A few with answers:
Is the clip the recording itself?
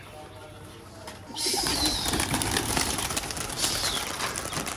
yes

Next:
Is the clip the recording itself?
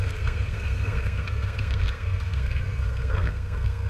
no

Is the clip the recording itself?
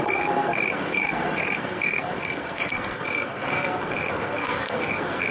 no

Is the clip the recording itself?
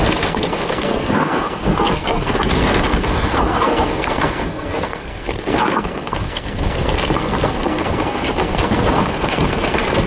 no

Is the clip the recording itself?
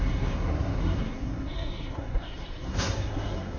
no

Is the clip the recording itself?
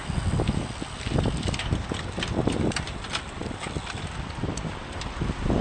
yes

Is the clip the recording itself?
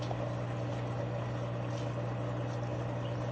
yes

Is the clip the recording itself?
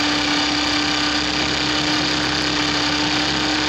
yes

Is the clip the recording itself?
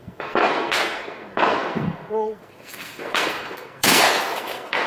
no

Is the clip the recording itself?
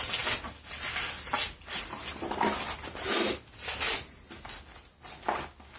yes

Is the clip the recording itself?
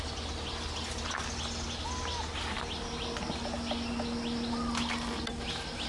yes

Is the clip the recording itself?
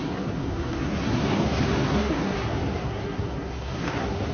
no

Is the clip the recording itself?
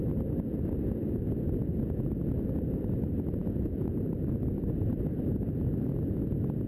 yes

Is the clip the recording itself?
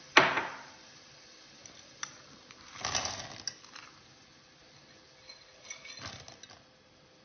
yes